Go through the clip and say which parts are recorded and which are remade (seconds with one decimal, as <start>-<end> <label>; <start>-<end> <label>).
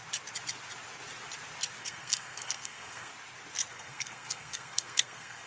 0.0-1.8 recorded; 1.8-3.1 remade; 3.1-3.7 recorded; 3.7-5.5 remade